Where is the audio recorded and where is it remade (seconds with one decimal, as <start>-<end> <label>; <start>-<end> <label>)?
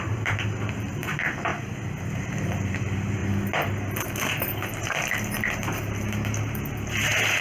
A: 0.0-1.5 remade; 1.5-2.1 recorded; 2.1-3.2 remade; 3.2-5.0 recorded; 5.0-7.4 remade